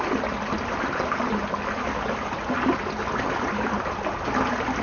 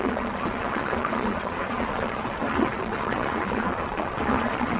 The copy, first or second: second